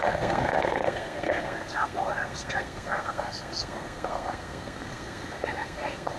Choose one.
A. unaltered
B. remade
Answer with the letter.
B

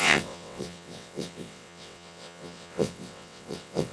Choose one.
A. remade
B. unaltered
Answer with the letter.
A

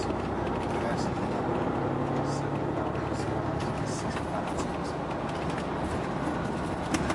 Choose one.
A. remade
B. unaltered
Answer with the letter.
B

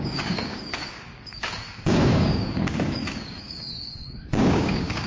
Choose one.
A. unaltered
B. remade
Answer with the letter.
B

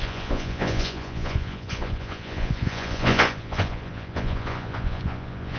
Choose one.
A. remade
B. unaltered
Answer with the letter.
A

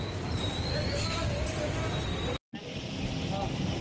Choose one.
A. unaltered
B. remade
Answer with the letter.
A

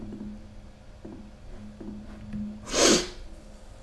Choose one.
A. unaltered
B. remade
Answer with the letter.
A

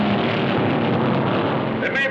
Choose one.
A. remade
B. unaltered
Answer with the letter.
B